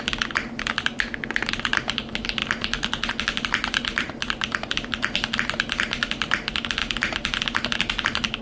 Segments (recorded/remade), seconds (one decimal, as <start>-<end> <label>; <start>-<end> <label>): 0.0-8.4 recorded